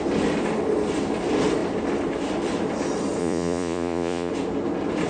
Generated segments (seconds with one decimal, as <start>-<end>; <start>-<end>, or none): 3.2-4.3